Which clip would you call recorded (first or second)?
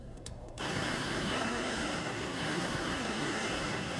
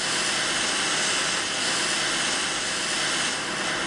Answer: second